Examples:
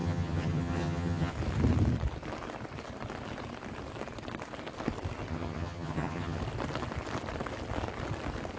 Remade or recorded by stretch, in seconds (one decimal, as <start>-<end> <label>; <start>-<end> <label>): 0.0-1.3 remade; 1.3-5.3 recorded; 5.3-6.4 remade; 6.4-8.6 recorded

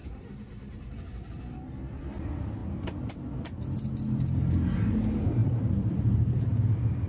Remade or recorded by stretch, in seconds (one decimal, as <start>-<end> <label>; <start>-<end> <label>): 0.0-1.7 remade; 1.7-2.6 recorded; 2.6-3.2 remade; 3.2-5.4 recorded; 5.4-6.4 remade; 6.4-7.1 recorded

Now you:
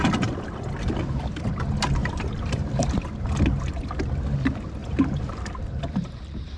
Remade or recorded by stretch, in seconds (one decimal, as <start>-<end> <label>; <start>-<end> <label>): 0.0-2.0 recorded; 2.0-3.0 remade; 3.0-4.8 recorded; 4.8-6.6 remade